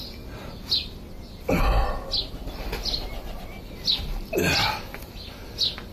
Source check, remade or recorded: recorded